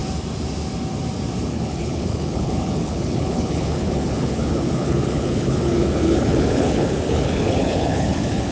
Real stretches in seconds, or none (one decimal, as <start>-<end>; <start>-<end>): 0.0-1.5